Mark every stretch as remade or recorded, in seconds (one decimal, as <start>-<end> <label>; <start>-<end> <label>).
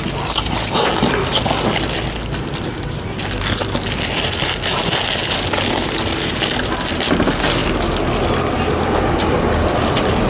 0.0-10.3 recorded